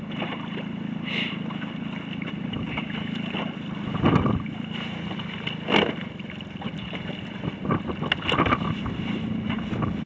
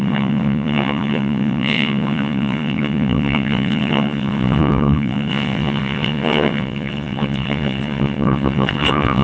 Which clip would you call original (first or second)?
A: first